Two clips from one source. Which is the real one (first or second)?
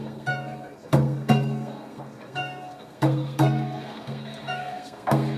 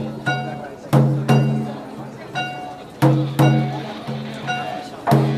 second